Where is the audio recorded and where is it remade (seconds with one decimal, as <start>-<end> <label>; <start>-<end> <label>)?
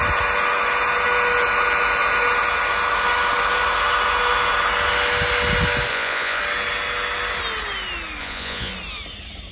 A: 0.0-5.9 recorded; 5.9-6.4 remade; 6.4-8.2 recorded; 8.2-8.7 remade; 8.7-9.5 recorded